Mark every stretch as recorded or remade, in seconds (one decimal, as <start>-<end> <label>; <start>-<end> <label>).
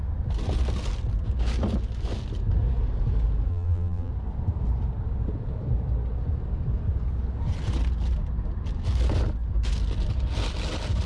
0.0-3.5 recorded; 3.5-4.1 remade; 4.1-11.1 recorded